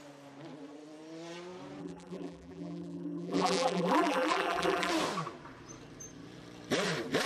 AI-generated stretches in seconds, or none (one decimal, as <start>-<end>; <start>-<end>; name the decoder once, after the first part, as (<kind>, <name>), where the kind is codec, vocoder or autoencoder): 1.8-4.9 (vocoder, BigVGAN v2)